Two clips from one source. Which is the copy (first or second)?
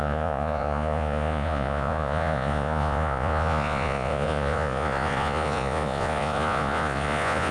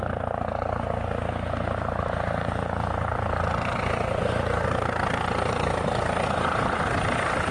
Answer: first